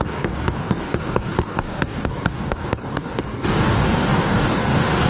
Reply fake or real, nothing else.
fake